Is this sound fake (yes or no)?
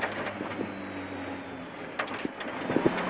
no